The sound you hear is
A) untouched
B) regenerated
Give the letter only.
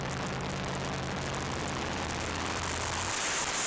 A